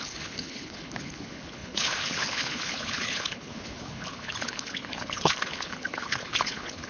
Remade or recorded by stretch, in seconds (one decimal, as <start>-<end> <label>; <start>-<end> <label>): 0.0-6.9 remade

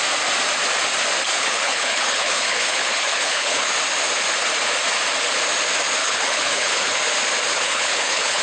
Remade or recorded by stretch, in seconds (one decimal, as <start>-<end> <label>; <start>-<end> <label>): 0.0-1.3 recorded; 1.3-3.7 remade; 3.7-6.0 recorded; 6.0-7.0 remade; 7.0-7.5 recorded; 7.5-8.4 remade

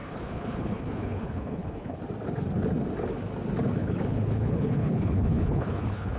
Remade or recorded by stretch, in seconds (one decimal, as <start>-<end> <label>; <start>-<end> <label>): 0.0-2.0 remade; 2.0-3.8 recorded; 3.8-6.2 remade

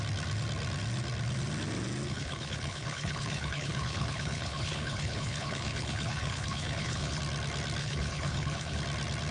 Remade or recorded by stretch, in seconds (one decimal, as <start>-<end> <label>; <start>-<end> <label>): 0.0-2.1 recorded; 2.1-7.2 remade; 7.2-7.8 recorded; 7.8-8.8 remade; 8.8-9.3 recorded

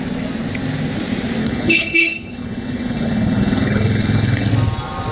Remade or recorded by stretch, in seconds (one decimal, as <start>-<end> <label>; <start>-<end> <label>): 0.0-1.4 recorded; 1.4-4.5 remade; 4.5-5.1 recorded

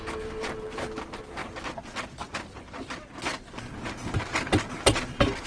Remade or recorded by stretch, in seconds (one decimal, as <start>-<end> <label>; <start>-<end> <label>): 0.0-5.5 recorded

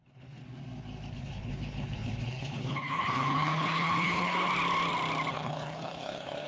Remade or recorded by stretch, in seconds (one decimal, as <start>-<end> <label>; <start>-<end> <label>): 0.0-0.4 remade; 0.4-1.1 recorded; 1.1-4.5 remade; 4.5-5.3 recorded; 5.3-6.5 remade

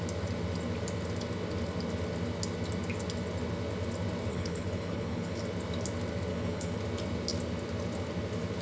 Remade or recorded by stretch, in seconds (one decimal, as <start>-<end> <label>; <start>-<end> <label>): 0.0-4.3 recorded; 4.3-5.4 remade; 5.4-6.3 recorded; 6.3-6.8 remade; 6.8-8.6 recorded